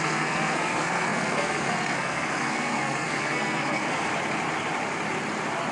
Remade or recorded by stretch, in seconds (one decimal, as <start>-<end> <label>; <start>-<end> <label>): 0.0-4.1 remade; 4.1-5.7 recorded